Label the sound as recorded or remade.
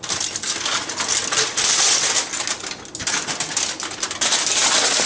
recorded